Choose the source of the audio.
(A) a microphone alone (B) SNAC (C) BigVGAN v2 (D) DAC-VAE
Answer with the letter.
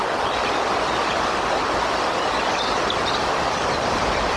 C